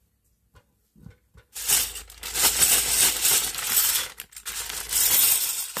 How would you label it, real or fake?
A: real